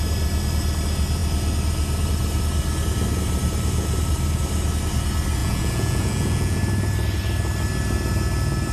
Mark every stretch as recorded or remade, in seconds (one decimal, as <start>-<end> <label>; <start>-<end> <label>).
0.0-5.4 recorded; 5.4-6.6 remade; 6.6-8.7 recorded